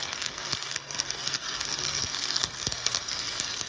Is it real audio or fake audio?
fake